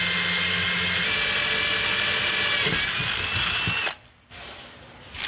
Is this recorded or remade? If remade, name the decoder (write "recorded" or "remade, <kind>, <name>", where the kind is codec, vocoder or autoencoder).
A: recorded